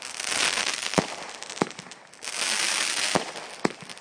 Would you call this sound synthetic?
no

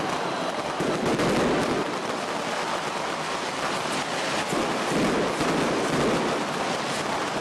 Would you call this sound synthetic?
no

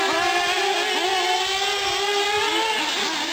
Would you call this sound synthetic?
no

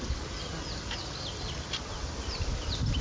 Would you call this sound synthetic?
no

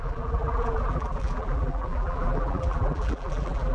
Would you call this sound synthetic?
yes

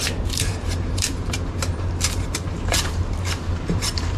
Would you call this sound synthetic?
yes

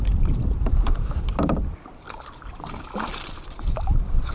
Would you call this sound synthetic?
yes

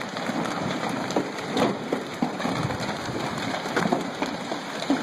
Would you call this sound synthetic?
yes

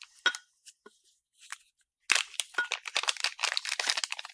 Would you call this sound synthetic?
no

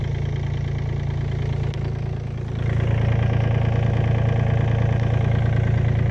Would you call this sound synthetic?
no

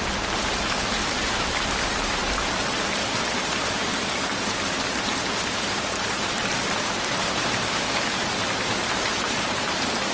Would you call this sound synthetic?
yes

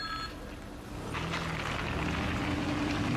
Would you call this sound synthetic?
no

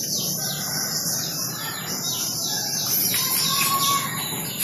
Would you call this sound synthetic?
yes